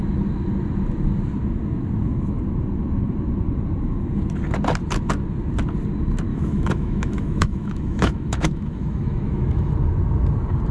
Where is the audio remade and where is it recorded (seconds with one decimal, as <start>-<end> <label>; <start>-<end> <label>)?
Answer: 0.0-6.3 recorded; 6.3-9.7 remade; 9.7-10.7 recorded